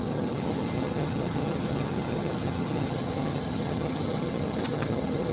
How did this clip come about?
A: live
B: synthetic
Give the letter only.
B